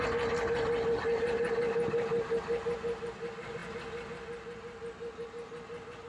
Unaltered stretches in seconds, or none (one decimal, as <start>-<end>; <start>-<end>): 0.0-6.1